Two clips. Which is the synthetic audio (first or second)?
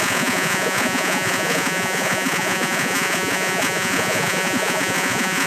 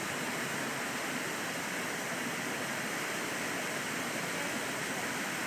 first